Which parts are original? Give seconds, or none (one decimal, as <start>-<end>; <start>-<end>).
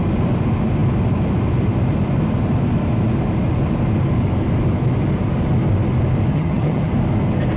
0.0-6.3; 6.9-7.6